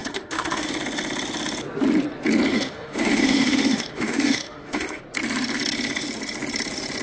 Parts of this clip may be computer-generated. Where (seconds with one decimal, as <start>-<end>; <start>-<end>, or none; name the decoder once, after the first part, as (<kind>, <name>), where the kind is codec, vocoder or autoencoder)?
0.0-0.7 (autoencoder, DAC-VAE); 2.5-5.0